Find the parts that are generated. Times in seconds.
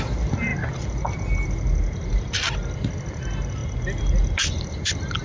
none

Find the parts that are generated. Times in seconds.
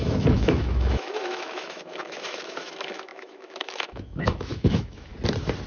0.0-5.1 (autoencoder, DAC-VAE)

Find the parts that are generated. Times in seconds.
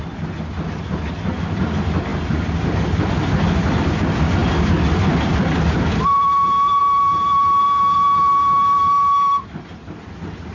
none